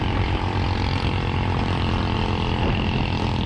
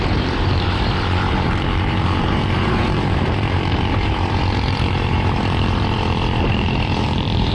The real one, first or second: first